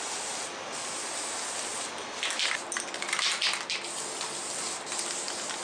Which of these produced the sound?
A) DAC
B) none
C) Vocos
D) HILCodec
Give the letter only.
B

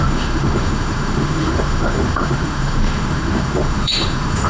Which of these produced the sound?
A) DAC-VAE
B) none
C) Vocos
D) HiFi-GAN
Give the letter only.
A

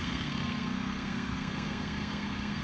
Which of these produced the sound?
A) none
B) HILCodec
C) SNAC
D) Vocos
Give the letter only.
C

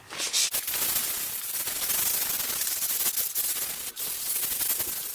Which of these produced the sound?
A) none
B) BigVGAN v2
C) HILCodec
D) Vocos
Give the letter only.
A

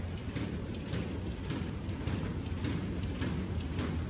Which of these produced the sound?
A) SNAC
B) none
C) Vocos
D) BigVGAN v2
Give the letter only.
B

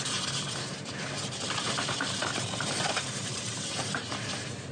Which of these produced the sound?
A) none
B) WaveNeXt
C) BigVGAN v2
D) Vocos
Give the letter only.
C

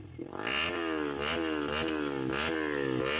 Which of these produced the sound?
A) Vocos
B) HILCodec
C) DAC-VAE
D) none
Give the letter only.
D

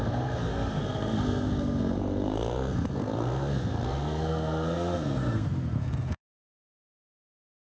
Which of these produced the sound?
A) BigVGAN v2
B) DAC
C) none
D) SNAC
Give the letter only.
D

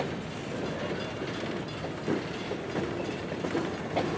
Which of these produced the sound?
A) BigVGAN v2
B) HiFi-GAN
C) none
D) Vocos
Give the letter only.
C